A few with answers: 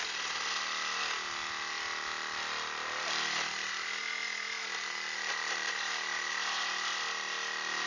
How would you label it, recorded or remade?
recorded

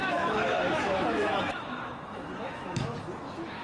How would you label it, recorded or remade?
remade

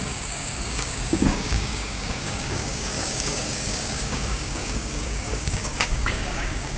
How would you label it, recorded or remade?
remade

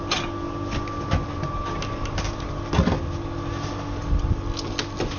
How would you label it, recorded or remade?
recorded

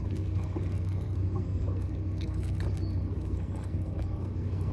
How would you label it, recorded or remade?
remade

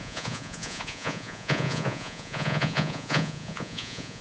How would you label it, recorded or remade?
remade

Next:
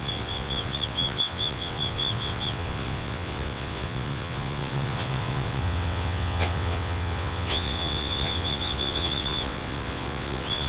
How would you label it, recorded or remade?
remade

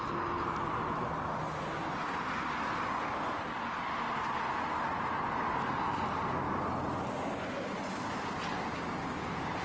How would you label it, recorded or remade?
recorded